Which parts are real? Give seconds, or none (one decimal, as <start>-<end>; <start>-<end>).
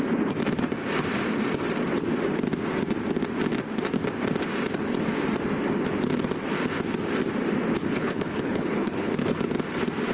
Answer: 0.0-7.8; 9.1-10.1